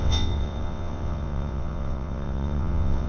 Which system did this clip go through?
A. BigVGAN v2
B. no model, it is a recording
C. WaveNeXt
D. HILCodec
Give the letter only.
C